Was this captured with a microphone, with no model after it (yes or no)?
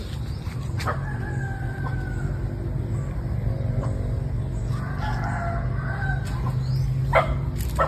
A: yes